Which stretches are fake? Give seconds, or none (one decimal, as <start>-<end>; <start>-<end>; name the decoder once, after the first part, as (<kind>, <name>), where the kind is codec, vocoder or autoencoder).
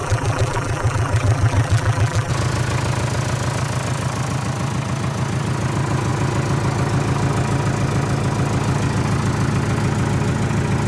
0.0-2.3 (vocoder, BigVGAN v2)